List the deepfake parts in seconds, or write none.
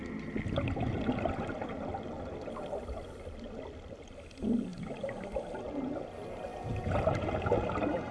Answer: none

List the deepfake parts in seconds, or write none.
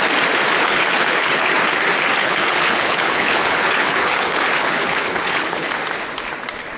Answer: 0.6-1.5 (codec, HILCodec); 2.2-5.7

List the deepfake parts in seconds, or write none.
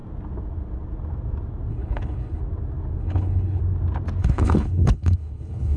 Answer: 1.7-2.4 (codec, HILCodec); 3.0-3.6; 4.2-5.8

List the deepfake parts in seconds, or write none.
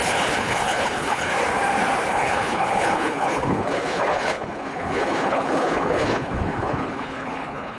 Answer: 0.0-1.3 (codec, HILCodec); 2.1-7.8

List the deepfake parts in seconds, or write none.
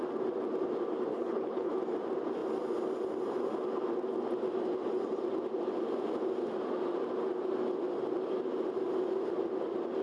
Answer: 1.1-1.7 (codec, HILCodec)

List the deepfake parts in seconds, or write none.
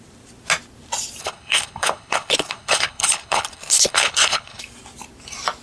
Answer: 1.2-4.6 (codec, HILCodec)